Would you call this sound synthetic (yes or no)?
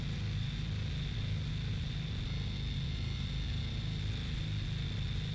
no